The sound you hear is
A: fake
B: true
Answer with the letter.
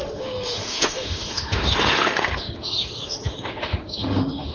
A